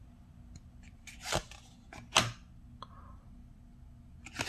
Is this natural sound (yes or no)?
yes